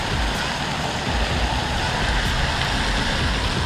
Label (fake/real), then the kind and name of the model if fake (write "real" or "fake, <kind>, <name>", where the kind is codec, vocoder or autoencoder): real